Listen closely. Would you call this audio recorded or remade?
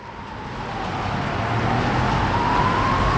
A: recorded